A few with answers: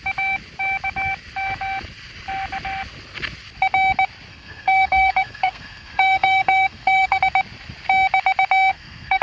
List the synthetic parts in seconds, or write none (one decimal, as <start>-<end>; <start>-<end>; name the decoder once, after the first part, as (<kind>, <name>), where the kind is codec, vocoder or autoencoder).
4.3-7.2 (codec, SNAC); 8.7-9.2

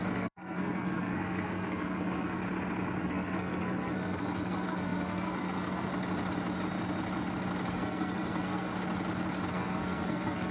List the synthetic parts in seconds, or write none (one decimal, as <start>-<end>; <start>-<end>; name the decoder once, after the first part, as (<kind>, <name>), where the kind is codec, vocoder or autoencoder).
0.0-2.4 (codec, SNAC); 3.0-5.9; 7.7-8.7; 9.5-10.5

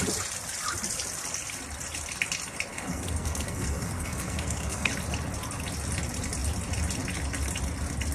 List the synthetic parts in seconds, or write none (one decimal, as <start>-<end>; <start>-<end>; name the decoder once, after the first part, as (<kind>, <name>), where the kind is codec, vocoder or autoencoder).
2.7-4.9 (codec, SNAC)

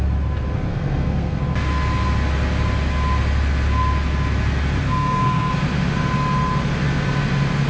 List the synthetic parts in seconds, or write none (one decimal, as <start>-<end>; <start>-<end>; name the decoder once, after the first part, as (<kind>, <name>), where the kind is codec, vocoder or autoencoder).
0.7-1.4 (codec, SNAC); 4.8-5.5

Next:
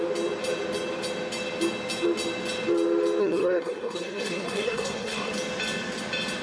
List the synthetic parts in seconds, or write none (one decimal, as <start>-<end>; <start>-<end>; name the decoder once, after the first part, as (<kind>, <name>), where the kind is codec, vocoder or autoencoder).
3.2-5.3 (codec, SNAC)

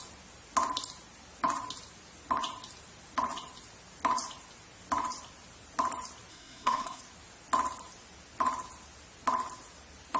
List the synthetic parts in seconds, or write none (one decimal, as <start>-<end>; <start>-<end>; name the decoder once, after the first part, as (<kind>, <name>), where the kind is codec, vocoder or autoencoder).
6.3-7.0 (codec, SNAC)